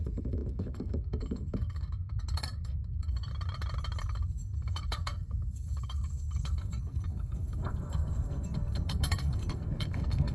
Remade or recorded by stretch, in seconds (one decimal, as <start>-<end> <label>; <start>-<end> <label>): 0.0-3.3 remade; 3.3-4.0 recorded; 4.0-10.3 remade